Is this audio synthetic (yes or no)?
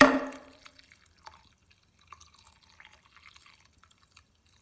yes